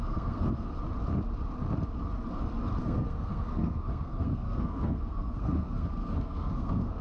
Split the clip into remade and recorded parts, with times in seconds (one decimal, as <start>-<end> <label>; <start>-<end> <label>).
0.0-0.7 remade; 0.7-2.8 recorded; 2.8-7.0 remade